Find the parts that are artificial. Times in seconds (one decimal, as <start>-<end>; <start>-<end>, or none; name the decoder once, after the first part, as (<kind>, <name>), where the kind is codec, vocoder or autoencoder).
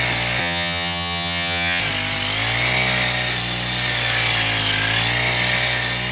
0.4-1.8 (vocoder, HiFi-GAN)